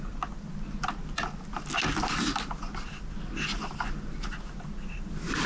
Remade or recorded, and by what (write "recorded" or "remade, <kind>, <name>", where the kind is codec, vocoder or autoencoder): recorded